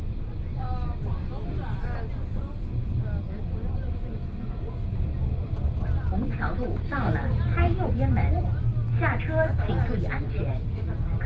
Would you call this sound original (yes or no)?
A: yes